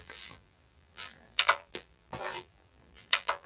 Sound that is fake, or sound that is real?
fake